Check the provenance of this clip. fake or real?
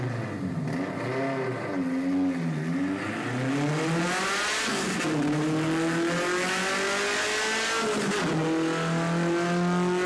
real